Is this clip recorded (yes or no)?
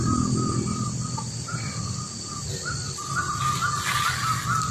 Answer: yes